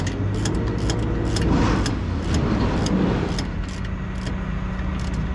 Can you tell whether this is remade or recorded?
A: recorded